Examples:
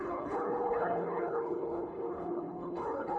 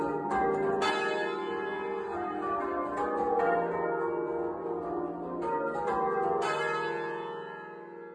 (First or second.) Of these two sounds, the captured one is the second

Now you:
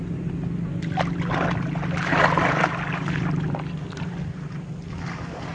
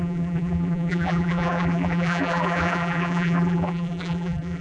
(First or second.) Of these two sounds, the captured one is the first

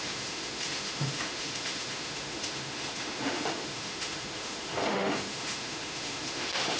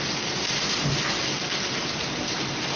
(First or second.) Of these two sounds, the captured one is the second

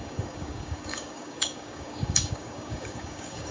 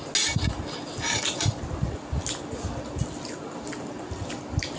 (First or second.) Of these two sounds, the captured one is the second